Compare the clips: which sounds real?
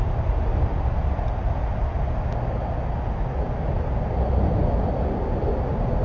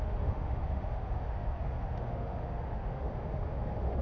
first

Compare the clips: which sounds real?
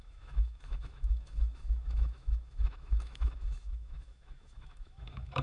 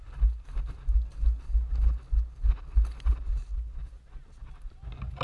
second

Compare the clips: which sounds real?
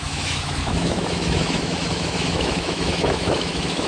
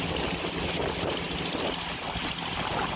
second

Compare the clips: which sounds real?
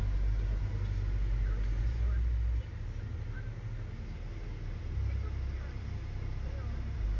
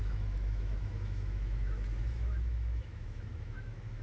first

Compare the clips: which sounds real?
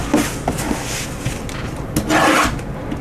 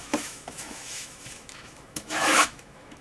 first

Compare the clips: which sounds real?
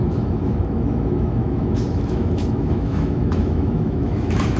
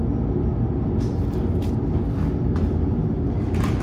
second